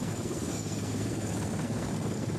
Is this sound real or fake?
fake